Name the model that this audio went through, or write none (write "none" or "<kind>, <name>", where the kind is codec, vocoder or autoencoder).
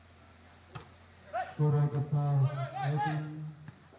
none